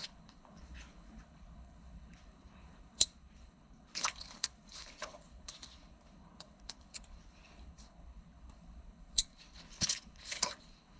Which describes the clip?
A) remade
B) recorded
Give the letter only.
A